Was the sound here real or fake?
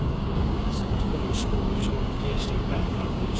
fake